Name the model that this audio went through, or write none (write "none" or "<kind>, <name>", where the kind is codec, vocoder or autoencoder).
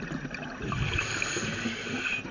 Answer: none